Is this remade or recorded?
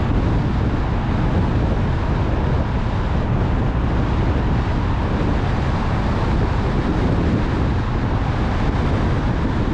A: recorded